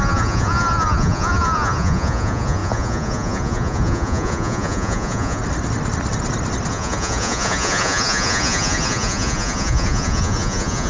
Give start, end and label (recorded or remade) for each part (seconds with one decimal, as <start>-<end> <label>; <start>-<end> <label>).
0.0-5.4 remade; 5.4-6.7 recorded; 6.7-10.9 remade

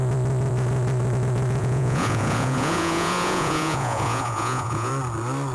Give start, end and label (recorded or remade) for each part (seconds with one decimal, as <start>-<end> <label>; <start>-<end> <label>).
0.0-1.6 recorded; 1.6-4.9 remade; 4.9-5.5 recorded

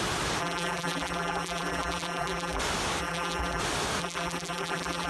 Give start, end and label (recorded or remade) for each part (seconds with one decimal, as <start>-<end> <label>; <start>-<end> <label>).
0.0-0.4 recorded; 0.4-2.6 remade; 2.6-3.0 recorded; 3.0-3.6 remade; 3.6-4.0 recorded; 4.0-5.1 remade

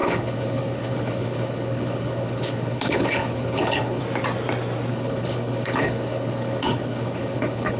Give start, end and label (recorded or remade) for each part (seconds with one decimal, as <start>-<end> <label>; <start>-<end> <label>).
0.0-4.0 remade; 4.0-4.9 recorded; 4.9-7.8 remade

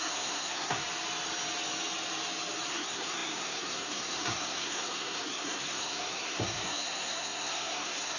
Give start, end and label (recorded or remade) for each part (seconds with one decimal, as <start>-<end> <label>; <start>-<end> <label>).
0.0-0.8 remade; 0.8-2.7 recorded; 2.7-8.2 remade